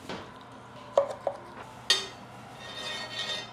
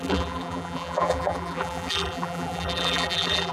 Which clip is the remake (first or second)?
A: second